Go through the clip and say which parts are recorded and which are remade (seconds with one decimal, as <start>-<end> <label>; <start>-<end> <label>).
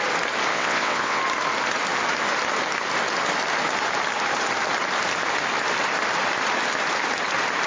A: 0.0-0.5 recorded; 0.5-1.2 remade; 1.2-7.7 recorded